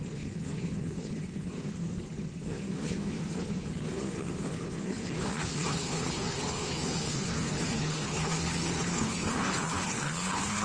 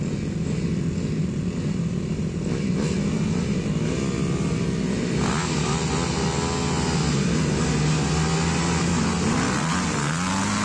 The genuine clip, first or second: second